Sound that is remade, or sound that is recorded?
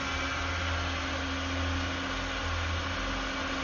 recorded